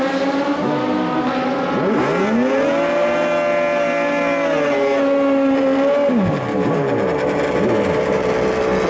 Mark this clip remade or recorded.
recorded